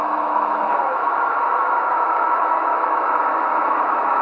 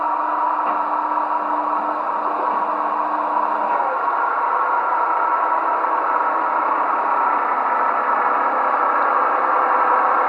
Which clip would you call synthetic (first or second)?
first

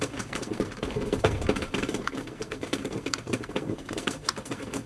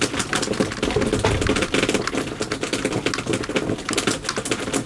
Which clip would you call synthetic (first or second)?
first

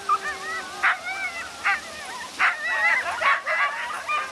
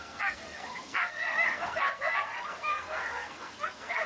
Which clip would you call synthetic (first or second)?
second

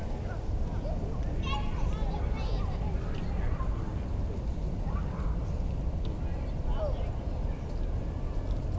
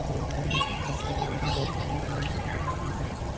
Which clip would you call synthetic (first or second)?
second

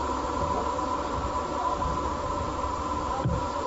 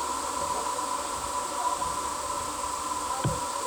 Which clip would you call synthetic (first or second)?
first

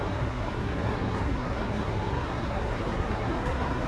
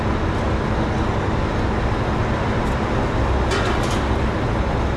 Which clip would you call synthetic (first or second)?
first